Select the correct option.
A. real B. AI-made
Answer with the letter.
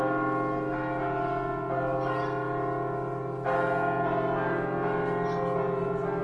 A